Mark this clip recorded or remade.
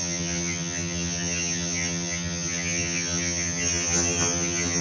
remade